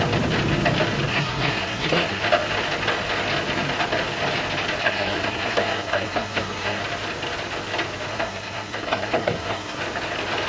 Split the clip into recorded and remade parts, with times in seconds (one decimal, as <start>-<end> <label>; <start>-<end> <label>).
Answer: 0.0-1.1 recorded; 1.1-2.2 remade; 2.2-4.8 recorded; 4.8-6.8 remade; 6.8-8.1 recorded; 8.1-9.8 remade; 9.8-10.5 recorded